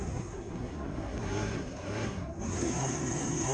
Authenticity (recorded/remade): remade